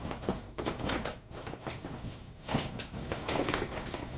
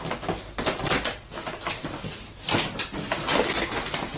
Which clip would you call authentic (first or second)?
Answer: second